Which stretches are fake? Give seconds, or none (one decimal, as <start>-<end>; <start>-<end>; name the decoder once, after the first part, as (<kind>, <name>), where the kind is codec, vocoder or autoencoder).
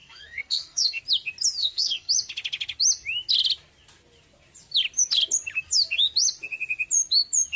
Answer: 0.0-1.0 (codec, SNAC); 1.6-2.1